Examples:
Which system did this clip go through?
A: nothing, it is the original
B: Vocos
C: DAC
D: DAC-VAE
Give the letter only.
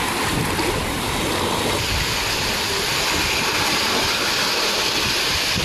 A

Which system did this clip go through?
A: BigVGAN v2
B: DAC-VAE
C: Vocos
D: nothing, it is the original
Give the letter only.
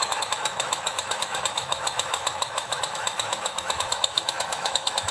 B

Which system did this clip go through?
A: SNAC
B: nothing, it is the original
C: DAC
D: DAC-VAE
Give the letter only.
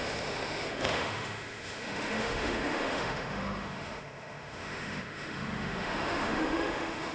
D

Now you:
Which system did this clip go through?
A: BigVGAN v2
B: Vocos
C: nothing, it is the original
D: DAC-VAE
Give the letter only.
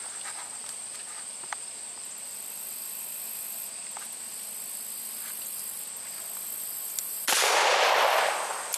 C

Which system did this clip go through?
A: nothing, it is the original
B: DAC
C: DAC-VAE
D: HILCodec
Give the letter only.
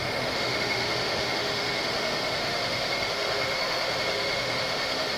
C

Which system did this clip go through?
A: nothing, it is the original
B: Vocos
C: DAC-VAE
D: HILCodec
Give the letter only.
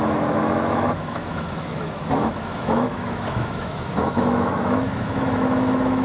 C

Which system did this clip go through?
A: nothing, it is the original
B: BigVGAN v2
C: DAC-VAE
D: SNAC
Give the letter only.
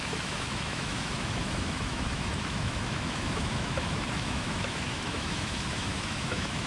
C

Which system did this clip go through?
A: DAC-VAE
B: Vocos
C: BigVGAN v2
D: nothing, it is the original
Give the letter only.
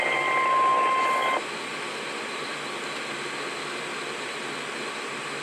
D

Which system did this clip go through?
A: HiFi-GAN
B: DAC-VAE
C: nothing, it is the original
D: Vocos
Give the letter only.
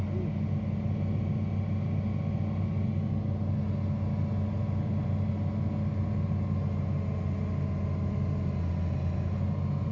C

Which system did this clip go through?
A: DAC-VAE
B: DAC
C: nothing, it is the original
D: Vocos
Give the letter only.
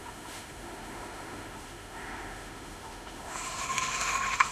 A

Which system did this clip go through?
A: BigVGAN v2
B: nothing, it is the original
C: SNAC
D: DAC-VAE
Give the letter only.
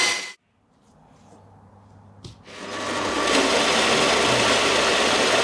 B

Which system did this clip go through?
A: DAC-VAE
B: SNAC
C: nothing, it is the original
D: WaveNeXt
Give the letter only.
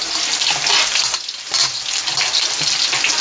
C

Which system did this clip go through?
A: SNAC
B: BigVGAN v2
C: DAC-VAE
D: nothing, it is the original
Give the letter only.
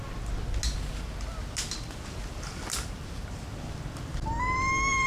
D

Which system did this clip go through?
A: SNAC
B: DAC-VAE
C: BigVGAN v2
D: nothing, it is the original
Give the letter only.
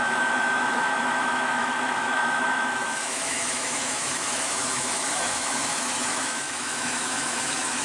B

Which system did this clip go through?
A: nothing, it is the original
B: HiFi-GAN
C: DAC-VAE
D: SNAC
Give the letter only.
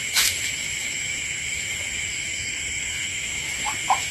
C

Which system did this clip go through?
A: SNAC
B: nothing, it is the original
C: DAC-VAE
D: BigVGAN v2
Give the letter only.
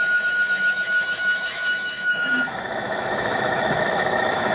C